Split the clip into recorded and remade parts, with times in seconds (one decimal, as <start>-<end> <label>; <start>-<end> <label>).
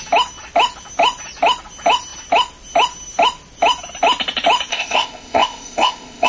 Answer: 0.0-4.7 recorded; 4.7-6.3 remade